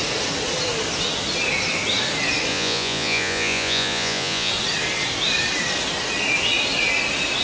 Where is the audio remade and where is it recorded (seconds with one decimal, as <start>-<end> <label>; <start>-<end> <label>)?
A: 0.0-2.5 recorded; 2.5-4.5 remade; 4.5-7.4 recorded